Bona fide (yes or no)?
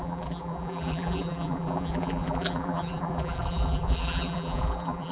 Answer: no